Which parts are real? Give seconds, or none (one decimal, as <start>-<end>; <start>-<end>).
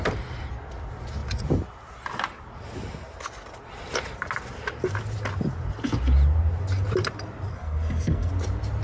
0.0-7.5; 8.3-8.8